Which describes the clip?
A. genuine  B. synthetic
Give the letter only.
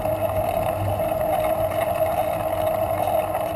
A